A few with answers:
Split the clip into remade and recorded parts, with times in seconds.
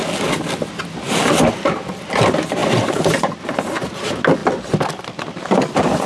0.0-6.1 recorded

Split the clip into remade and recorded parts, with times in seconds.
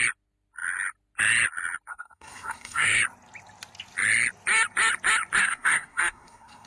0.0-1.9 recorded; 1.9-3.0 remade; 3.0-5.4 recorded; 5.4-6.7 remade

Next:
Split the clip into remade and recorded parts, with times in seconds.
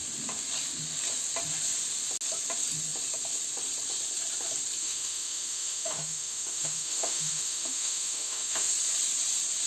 0.0-4.8 recorded; 4.8-8.7 remade; 8.7-9.7 recorded